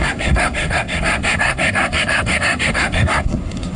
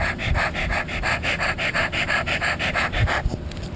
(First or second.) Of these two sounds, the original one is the second